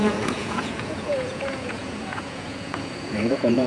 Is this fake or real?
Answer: fake